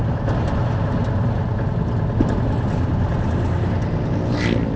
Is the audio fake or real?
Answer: real